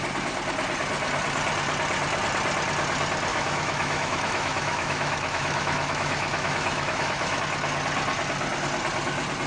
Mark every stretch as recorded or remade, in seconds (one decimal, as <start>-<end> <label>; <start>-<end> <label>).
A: 0.0-3.3 recorded; 3.3-7.4 remade; 7.4-9.5 recorded